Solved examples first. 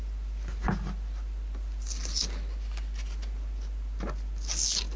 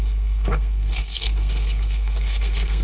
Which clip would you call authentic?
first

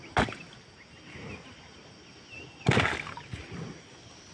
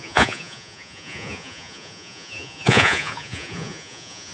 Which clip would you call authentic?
first